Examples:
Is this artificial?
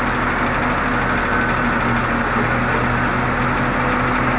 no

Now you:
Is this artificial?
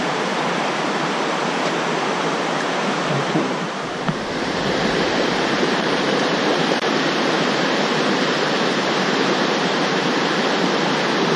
yes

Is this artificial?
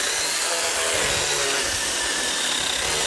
no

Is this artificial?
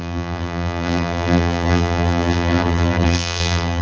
yes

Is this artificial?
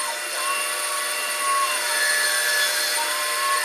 no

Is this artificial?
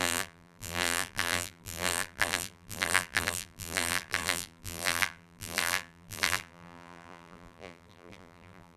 yes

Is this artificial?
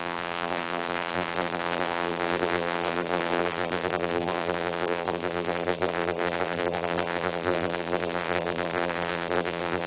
yes